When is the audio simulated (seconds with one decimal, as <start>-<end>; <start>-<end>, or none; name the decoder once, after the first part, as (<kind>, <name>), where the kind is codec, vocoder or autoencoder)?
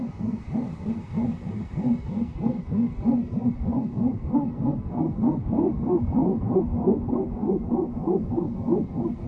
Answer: 0.0-9.3 (codec, SNAC)